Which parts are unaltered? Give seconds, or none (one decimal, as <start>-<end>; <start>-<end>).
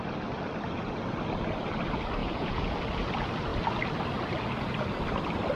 0.0-2.2; 2.7-5.6